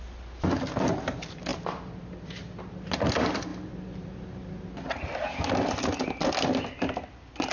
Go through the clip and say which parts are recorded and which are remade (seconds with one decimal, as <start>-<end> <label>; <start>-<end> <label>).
0.0-7.5 recorded